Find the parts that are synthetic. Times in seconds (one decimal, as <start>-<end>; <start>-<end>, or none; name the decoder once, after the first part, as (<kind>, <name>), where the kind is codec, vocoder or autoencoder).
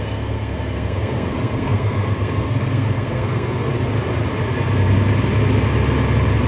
0.0-3.7 (codec, SNAC)